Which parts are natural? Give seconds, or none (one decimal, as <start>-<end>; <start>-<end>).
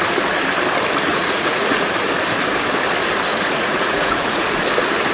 0.0-1.1; 1.9-3.3; 4.4-5.1